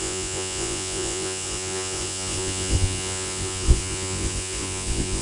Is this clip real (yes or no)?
no